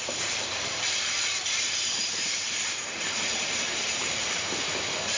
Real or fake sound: fake